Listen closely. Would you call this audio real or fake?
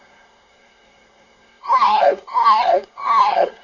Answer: fake